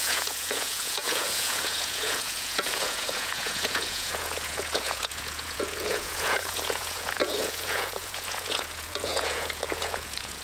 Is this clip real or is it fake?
fake